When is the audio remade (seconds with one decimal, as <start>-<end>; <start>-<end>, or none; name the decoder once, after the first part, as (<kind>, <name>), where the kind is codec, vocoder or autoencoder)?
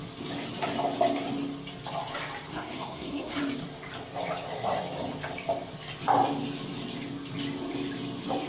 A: 2.5-3.4 (codec, SNAC)